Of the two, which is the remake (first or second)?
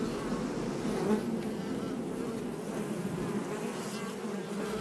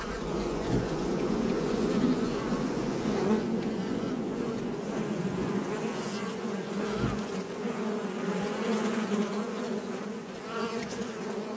second